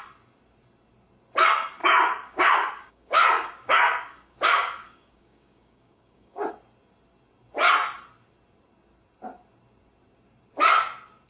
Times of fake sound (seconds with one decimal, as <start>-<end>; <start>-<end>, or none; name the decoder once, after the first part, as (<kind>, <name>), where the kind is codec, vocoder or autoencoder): 1.8-6.5 (codec, DAC)